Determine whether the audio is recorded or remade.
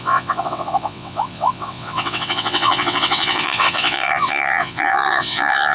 remade